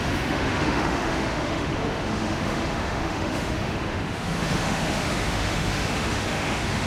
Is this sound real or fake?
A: fake